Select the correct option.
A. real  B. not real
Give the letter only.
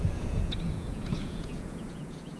B